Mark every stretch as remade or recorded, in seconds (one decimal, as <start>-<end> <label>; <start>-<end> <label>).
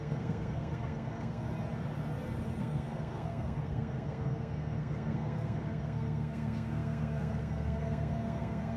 0.0-1.5 remade; 1.5-2.6 recorded; 2.6-8.8 remade